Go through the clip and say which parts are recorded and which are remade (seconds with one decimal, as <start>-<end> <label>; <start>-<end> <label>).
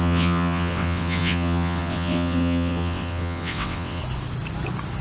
0.0-4.0 remade; 4.0-5.0 recorded